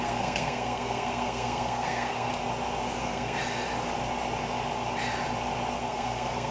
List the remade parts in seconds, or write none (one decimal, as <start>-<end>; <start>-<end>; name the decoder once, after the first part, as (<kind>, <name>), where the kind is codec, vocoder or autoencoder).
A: 0.0-2.3 (codec, SNAC); 3.0-3.4; 5.8-6.5